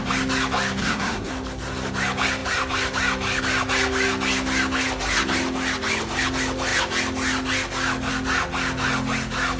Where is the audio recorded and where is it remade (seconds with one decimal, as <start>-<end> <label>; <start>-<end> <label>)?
0.0-0.8 recorded; 0.8-1.3 remade; 1.3-9.6 recorded